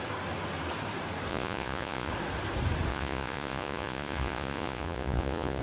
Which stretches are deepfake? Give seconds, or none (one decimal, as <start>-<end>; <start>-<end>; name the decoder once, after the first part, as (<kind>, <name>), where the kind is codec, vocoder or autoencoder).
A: 1.3-2.1 (vocoder, Vocos); 2.9-5.6